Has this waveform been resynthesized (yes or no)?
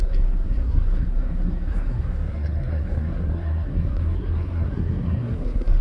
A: yes